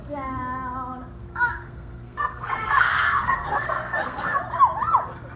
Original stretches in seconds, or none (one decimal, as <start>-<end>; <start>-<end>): 0.0-1.2; 4.4-5.4